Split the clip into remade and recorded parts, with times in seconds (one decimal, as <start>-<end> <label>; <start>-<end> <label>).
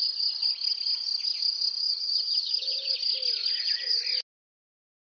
0.0-1.8 recorded; 1.8-2.9 remade; 2.9-3.4 recorded; 3.4-4.0 remade; 4.0-5.1 recorded